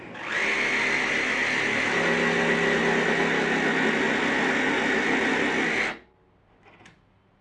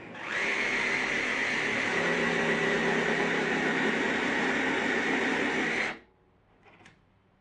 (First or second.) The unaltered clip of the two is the first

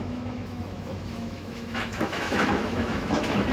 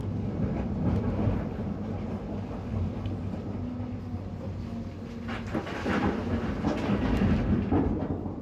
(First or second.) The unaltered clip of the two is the second